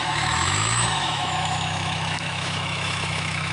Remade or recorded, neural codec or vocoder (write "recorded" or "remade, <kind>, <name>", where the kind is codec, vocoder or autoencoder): remade, autoencoder, DAC-VAE